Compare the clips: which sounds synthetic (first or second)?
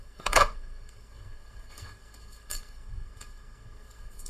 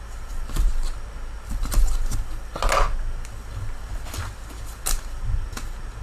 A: first